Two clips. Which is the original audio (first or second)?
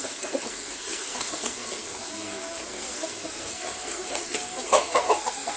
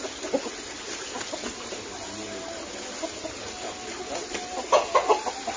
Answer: second